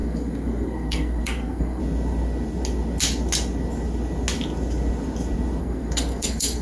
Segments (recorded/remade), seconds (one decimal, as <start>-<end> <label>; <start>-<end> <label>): 0.0-1.8 remade; 1.8-5.6 recorded; 5.6-6.6 remade